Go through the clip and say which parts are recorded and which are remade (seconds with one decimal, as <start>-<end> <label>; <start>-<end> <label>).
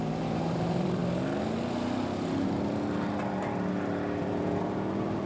0.0-1.0 remade; 1.0-4.2 recorded; 4.2-5.3 remade